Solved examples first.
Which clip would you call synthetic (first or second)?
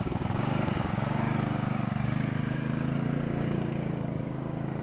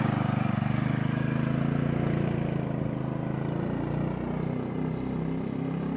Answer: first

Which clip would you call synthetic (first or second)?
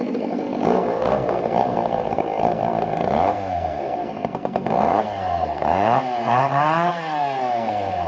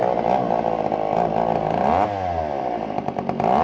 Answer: first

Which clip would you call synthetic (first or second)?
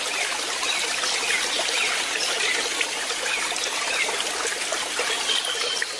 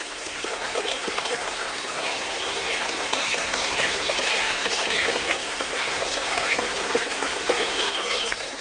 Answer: second